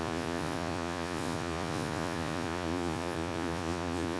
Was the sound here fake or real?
fake